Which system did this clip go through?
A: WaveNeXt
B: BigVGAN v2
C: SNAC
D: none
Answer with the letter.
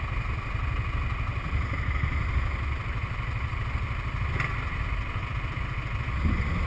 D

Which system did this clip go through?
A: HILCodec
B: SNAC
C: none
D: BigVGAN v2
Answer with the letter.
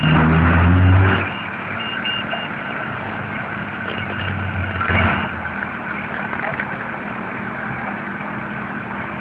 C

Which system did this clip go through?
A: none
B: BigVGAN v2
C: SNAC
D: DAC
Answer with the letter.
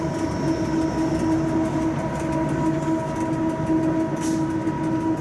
A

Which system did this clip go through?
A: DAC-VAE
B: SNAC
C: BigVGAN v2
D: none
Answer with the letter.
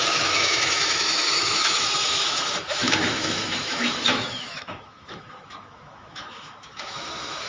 A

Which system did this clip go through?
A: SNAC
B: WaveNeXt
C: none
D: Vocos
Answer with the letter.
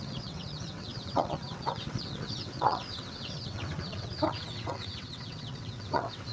B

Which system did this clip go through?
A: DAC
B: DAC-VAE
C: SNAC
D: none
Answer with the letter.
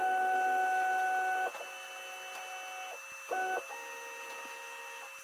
D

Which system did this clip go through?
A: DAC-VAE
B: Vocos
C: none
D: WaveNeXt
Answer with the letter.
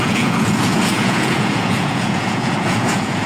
B